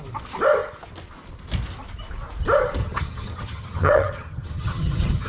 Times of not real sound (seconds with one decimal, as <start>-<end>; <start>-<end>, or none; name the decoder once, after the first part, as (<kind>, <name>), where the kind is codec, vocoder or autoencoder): 2.8-5.3 (vocoder, HiFi-GAN)